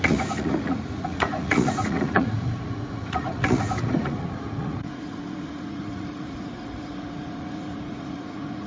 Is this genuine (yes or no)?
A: no